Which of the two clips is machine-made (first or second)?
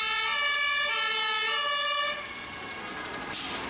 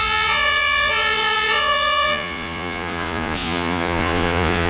second